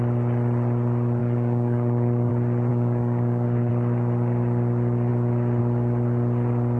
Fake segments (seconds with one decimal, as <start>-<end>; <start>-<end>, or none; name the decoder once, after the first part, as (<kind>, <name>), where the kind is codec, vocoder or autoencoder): 1.2-2.3 (codec, DAC); 2.7-3.7